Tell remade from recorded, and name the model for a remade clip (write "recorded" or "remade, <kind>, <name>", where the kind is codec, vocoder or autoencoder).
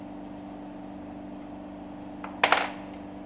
recorded